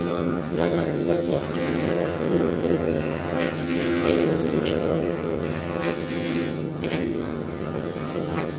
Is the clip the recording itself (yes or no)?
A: no